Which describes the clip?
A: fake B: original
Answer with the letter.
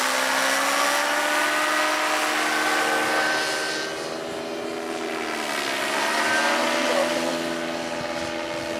B